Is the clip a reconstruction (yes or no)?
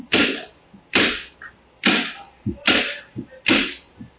no